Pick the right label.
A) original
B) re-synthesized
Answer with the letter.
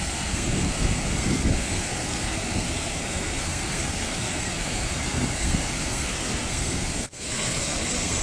B